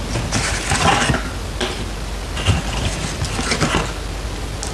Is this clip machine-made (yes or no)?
no